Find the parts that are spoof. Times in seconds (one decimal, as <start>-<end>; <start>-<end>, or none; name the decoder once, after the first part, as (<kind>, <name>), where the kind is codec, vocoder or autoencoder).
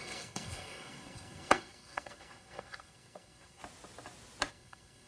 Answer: 0.0-3.6 (codec, SNAC); 4.5-5.1